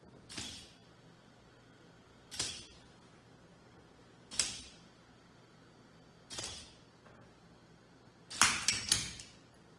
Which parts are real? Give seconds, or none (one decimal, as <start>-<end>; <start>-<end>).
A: 0.0-9.8

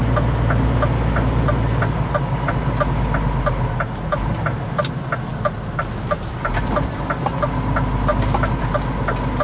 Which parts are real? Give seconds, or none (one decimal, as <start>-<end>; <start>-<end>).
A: 0.0-9.4

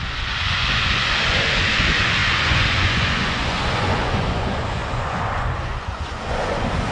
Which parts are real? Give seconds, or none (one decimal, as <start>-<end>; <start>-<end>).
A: none

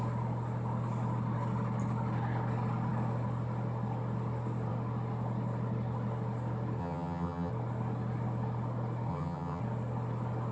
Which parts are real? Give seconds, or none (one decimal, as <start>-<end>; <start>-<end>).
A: 0.0-6.8; 7.5-9.1; 9.6-10.5